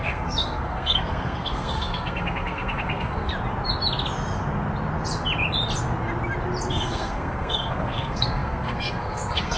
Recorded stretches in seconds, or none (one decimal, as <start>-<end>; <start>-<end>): 3.3-6.7